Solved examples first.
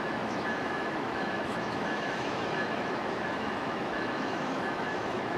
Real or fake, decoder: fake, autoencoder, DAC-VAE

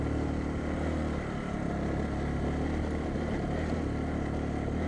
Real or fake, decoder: real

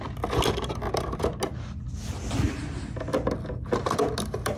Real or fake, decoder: real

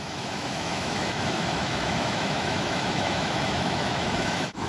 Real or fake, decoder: fake, autoencoder, DAC-VAE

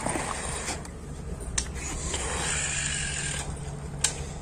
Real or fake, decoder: real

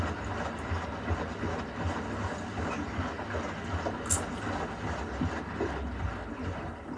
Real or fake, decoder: real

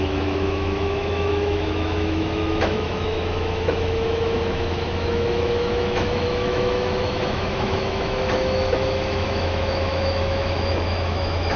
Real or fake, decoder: fake, autoencoder, DAC-VAE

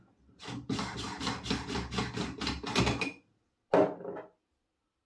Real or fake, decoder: real